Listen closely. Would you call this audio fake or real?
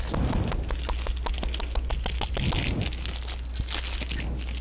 real